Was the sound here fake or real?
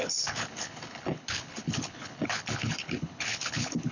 fake